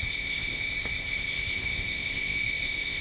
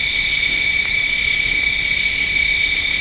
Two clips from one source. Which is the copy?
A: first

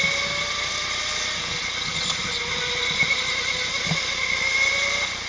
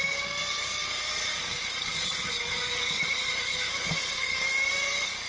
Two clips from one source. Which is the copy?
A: second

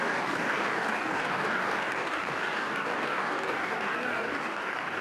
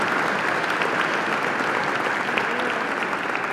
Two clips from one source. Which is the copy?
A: first